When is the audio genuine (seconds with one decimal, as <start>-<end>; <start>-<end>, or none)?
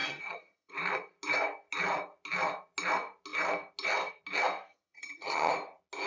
0.7-4.7; 5.5-6.1